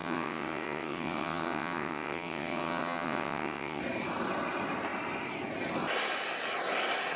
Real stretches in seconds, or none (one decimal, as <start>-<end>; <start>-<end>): 3.8-7.2